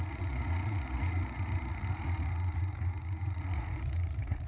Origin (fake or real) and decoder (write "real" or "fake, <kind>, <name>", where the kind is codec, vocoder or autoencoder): fake, vocoder, Vocos